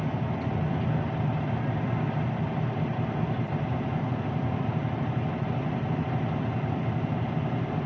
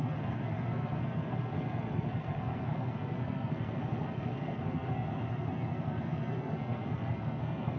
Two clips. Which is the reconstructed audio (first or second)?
second